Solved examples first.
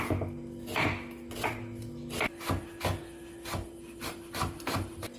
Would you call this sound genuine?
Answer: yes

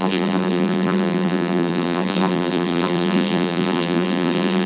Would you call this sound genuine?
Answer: no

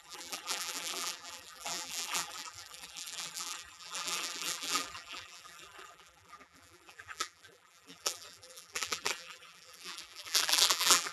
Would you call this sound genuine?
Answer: no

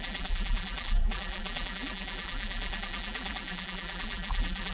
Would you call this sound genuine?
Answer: no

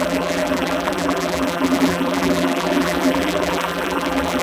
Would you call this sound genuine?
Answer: no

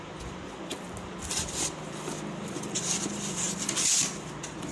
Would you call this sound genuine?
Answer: yes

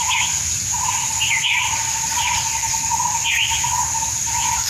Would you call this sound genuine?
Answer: no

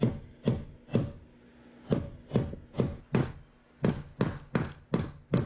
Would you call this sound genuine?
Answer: yes